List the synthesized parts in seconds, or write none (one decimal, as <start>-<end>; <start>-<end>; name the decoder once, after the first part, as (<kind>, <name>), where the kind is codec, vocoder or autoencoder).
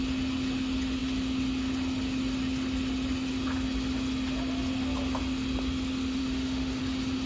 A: 6.2-6.8 (autoencoder, DAC-VAE)